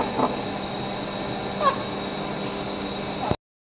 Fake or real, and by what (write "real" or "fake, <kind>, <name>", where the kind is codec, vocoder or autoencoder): real